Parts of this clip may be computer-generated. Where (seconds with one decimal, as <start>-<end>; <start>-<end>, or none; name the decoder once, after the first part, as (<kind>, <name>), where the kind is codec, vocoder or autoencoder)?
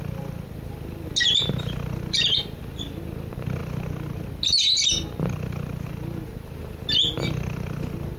none